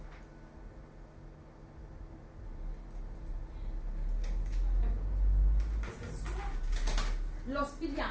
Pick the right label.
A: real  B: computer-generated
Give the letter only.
A